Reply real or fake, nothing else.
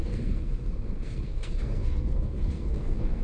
fake